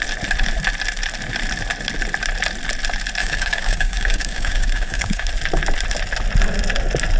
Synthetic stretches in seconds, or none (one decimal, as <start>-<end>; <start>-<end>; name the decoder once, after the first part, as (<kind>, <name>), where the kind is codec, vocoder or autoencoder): 3.2-5.3 (codec, DAC)